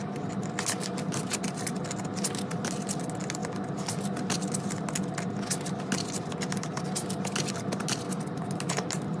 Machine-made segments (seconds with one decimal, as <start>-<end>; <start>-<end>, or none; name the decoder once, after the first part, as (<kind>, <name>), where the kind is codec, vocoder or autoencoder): none